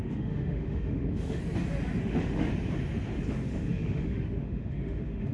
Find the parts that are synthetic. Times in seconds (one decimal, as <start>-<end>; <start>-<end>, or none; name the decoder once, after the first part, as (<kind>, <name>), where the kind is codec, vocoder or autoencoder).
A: 0.0-1.4 (autoencoder, DAC-VAE); 2.0-2.5; 3.3-5.3